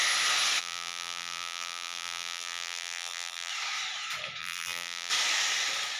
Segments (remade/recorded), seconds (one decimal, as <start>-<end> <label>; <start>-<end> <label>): 0.0-0.6 recorded; 0.6-3.5 remade; 3.5-4.4 recorded; 4.4-5.1 remade; 5.1-6.0 recorded